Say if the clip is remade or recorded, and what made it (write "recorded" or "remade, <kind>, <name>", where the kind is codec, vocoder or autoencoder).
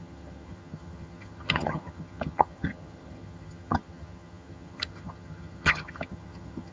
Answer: remade, vocoder, HiFi-GAN